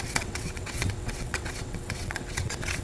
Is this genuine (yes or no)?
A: no